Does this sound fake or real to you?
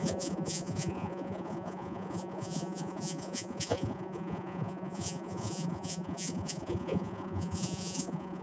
fake